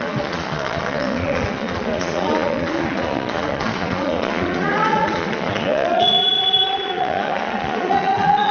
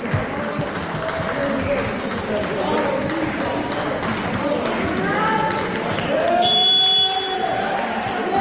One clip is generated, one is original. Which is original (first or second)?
second